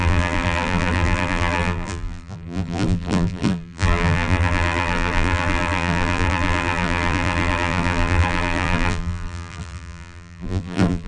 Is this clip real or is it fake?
fake